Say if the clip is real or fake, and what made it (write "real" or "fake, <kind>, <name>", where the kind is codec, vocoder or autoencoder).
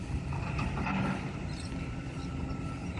real